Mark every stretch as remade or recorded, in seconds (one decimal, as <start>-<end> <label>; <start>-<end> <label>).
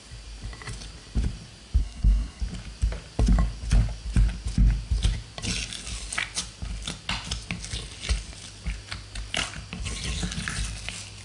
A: 0.0-1.8 recorded; 1.8-2.4 remade; 2.4-11.2 recorded